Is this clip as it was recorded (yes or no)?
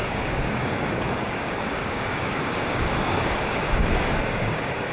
no